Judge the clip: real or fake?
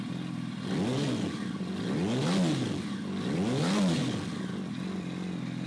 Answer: real